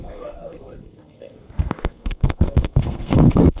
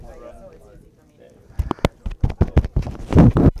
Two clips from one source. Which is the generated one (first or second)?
first